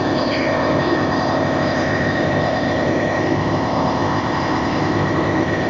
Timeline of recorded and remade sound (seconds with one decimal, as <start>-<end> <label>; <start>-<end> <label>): 0.0-5.7 remade

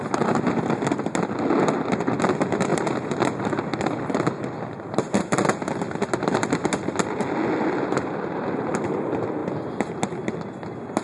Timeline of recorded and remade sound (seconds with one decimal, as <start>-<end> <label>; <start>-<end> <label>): 0.0-2.7 recorded; 2.7-5.2 remade; 5.2-9.4 recorded; 9.4-10.0 remade; 10.0-11.0 recorded